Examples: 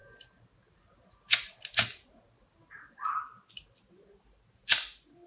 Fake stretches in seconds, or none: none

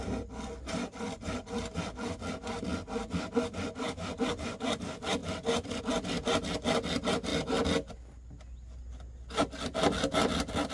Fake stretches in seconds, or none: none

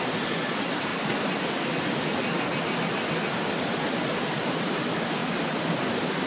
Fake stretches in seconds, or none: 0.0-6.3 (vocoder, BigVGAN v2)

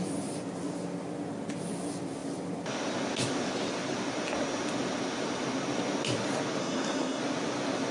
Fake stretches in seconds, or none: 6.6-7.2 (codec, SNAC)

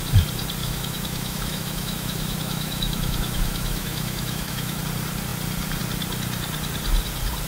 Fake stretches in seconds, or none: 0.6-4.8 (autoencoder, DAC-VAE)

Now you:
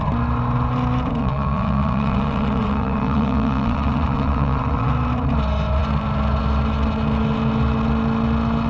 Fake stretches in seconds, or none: 1.2-4.9 (vocoder, WaveNeXt)

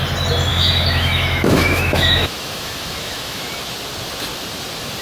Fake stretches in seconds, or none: 0.5-3.5 (autoencoder, DAC-VAE)

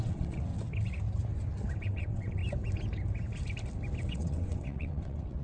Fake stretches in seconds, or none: 0.0-0.5 (vocoder, WaveNeXt); 1.8-2.4; 4.0-5.4